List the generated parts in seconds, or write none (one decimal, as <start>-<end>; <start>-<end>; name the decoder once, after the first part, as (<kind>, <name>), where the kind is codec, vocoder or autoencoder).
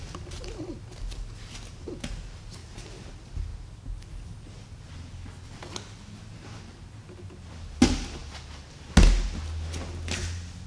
2.6-3.1 (vocoder, BigVGAN v2)